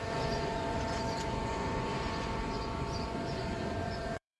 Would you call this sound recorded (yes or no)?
no